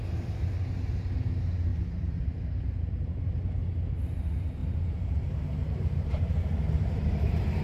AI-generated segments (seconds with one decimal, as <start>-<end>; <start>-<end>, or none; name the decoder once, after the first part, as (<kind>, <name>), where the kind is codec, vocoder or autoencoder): 1.7-2.7 (vocoder, BigVGAN v2); 4.6-7.6